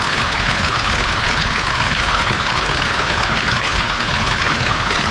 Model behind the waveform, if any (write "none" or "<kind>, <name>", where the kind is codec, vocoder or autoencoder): codec, HILCodec